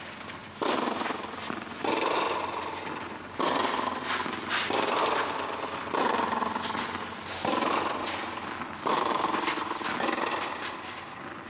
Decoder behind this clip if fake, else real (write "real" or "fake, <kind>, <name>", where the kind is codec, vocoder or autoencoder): real